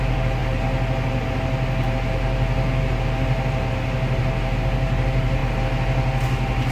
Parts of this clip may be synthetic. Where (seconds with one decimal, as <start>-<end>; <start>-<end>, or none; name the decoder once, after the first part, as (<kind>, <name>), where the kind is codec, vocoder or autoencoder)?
none